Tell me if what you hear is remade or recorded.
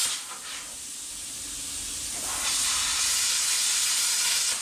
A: recorded